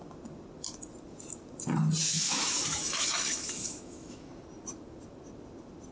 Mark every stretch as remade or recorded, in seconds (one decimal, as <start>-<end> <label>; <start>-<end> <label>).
0.0-2.0 recorded; 2.0-4.3 remade; 4.3-5.9 recorded